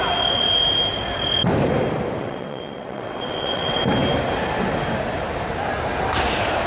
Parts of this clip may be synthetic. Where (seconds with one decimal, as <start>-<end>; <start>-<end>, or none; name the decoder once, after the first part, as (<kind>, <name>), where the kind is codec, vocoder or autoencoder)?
2.2-3.8 (vocoder, WaveNeXt)